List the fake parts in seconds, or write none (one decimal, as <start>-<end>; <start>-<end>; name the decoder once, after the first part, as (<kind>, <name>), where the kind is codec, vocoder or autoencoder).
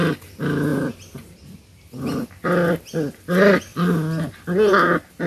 none